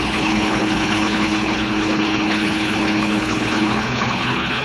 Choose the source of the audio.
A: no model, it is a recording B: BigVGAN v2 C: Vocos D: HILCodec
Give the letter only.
D